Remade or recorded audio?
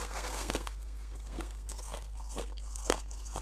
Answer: remade